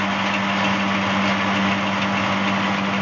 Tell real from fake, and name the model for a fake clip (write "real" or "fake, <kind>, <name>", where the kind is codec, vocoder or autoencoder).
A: real